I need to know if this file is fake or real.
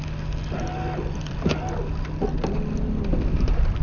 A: real